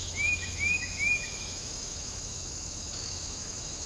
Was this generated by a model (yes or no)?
yes